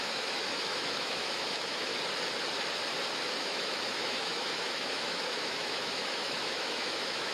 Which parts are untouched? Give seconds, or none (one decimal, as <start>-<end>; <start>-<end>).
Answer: 1.9-3.4